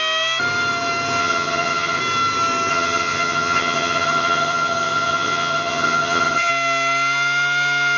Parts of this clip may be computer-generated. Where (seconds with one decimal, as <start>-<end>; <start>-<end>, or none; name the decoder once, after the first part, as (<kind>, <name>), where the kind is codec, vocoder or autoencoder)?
1.2-2.0 (vocoder, HiFi-GAN); 2.7-6.5